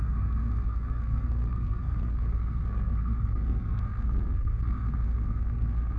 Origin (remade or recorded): remade